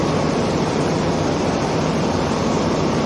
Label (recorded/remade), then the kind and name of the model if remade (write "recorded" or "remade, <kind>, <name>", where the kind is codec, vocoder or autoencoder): remade, vocoder, BigVGAN v2